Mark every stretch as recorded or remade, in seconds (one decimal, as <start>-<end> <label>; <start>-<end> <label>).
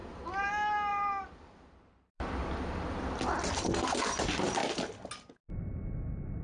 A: 0.0-0.5 remade; 0.5-0.9 recorded; 0.9-3.1 remade; 3.1-6.4 recorded